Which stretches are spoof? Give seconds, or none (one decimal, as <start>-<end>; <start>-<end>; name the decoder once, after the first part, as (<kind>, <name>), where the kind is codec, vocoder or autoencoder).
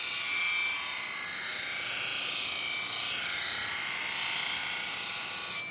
none